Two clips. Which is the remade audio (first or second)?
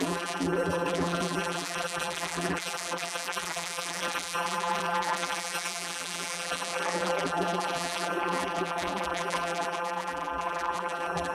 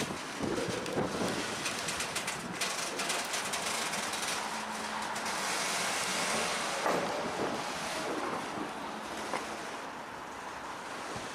first